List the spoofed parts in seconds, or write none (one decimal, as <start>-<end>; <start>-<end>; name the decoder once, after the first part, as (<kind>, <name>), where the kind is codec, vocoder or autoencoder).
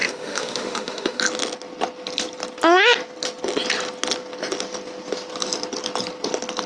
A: 0.0-1.2 (autoencoder, DAC-VAE)